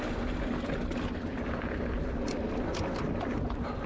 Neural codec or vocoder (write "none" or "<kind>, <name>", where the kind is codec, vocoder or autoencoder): none